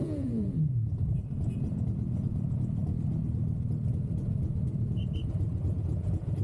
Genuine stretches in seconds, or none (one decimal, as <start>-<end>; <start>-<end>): 2.8-3.9